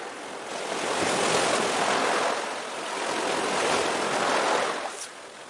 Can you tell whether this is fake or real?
real